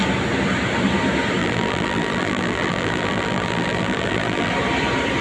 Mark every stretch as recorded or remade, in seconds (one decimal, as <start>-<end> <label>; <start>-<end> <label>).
0.0-1.4 recorded; 1.4-4.5 remade; 4.5-5.2 recorded